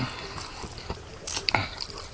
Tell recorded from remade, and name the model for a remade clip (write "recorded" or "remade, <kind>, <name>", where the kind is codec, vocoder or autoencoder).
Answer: recorded